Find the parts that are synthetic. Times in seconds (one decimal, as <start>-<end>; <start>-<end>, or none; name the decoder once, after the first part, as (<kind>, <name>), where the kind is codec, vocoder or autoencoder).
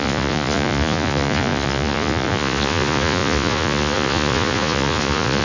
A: 0.0-5.4 (vocoder, Vocos)